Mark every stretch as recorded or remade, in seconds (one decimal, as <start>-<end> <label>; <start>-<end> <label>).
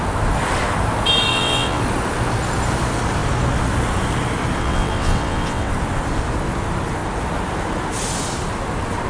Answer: 0.0-1.3 recorded; 1.3-1.8 remade; 1.8-4.6 recorded; 4.6-5.7 remade; 5.7-9.1 recorded